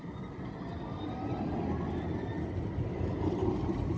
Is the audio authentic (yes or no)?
yes